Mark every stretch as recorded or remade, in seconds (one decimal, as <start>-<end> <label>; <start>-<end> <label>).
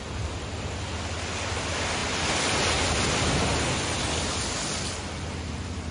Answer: 0.0-5.9 recorded